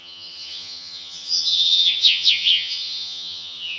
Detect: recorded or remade remade